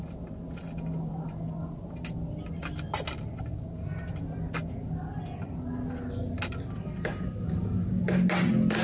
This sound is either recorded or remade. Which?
recorded